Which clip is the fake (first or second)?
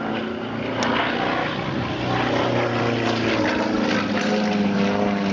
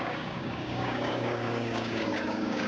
second